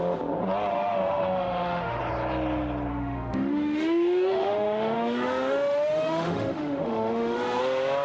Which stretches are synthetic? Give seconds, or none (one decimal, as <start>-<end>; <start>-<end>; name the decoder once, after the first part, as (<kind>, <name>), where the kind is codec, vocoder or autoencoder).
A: 0.7-2.0 (autoencoder, DAC-VAE); 2.9-7.6